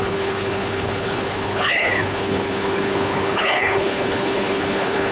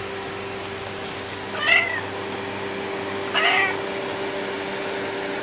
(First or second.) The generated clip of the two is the first